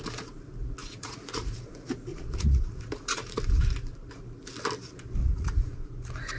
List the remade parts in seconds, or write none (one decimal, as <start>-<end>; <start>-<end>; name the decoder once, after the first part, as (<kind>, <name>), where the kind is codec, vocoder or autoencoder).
0.8-1.6 (vocoder, Vocos); 2.1-3.4; 5.2-5.9